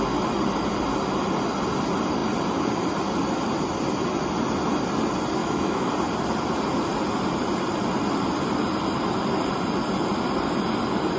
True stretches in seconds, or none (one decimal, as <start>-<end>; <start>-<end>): 0.0-5.4; 5.9-11.2